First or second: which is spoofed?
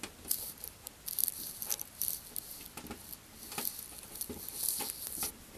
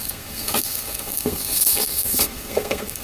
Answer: second